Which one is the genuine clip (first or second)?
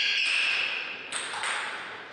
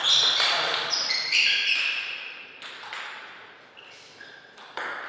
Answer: first